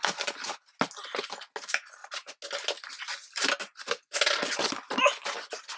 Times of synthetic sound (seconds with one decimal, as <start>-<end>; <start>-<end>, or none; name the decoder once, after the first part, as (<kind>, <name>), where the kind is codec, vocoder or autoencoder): none